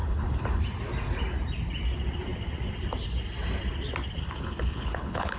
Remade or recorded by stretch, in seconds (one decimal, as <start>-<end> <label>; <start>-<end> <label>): 0.0-0.6 remade; 0.6-4.2 recorded; 4.2-5.4 remade